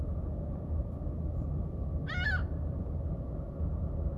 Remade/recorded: recorded